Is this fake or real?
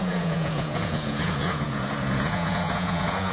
fake